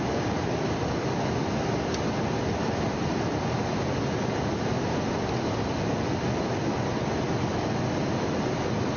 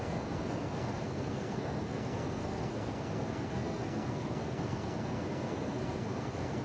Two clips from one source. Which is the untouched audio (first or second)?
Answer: first